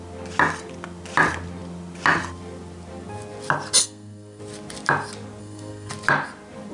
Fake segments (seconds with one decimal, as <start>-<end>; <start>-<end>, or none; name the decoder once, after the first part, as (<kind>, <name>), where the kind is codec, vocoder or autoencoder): 3.8-4.4 (codec, SNAC); 5.4-5.9